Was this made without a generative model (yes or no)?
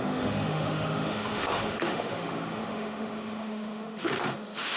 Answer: no